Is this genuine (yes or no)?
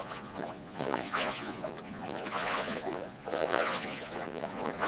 no